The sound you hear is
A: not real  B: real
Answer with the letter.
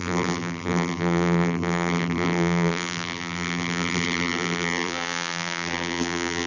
A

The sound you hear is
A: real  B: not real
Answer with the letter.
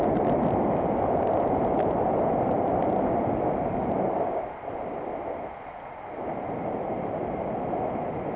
A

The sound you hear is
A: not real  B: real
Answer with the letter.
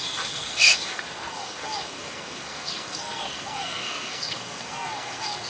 A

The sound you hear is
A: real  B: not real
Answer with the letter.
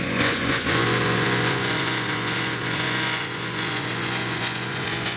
B